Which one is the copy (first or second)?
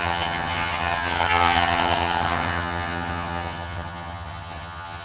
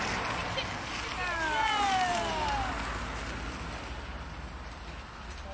first